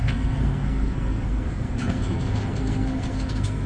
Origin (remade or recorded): remade